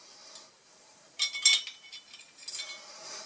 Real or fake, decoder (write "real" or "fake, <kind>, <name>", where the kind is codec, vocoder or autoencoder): fake, vocoder, BigVGAN v2